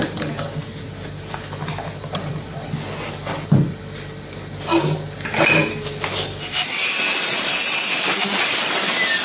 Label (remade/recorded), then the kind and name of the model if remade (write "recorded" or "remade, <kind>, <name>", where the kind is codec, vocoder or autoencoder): recorded